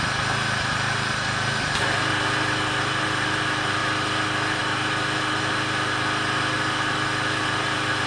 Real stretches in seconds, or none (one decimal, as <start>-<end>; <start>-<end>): 0.0-8.1